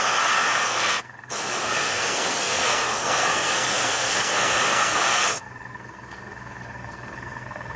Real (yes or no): no